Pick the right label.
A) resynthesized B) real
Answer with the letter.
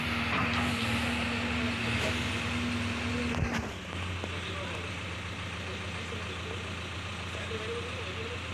B